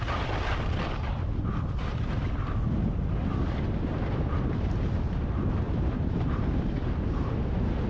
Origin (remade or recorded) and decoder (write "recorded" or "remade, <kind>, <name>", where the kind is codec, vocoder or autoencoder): recorded